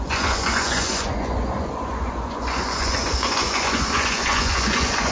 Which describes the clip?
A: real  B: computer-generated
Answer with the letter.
B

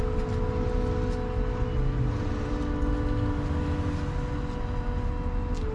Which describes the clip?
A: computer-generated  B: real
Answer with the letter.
B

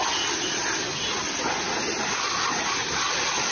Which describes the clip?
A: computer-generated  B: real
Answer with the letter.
B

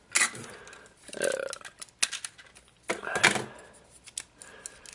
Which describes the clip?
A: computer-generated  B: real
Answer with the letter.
B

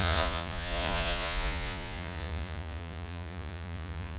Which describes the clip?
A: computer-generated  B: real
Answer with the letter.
A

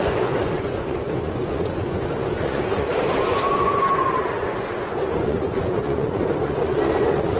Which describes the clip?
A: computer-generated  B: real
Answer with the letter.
A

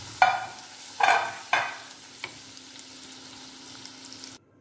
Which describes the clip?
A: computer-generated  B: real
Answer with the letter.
B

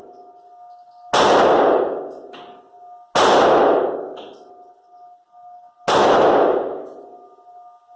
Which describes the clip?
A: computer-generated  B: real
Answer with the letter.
B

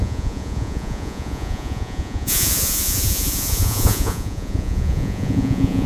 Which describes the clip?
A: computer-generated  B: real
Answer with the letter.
A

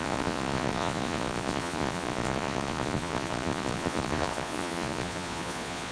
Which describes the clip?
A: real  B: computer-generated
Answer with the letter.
B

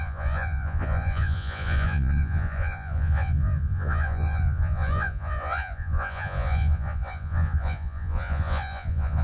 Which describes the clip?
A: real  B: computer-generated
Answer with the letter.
B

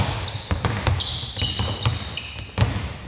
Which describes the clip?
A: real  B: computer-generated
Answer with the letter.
A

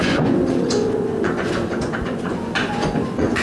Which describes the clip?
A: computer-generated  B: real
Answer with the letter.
A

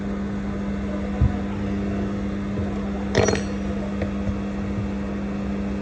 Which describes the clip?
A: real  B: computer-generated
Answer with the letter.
A